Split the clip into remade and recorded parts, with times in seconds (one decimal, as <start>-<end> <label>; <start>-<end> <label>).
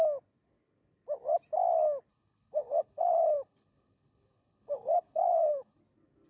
0.0-2.1 recorded; 2.1-5.8 remade; 5.8-6.3 recorded